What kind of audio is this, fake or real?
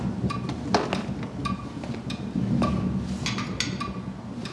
real